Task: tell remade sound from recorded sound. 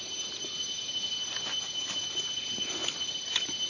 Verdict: recorded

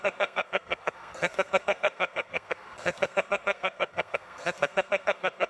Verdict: remade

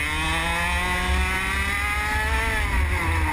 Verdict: recorded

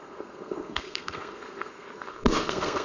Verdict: remade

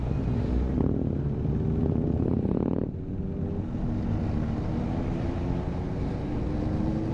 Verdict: recorded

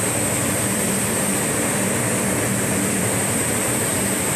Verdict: remade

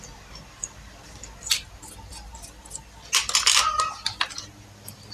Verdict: recorded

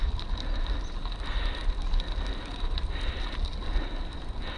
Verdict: recorded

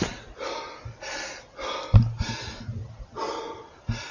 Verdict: recorded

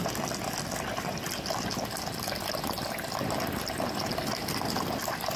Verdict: recorded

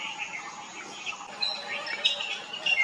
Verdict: recorded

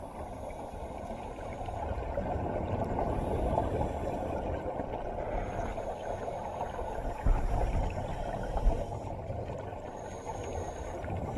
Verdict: remade